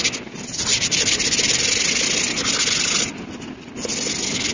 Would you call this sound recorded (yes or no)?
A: yes